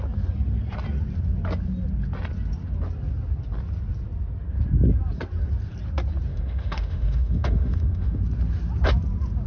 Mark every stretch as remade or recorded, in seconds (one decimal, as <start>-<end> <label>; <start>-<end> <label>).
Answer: 0.0-6.3 recorded; 6.3-8.2 remade; 8.2-9.5 recorded